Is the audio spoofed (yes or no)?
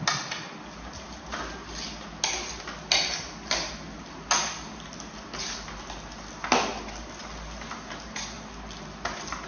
no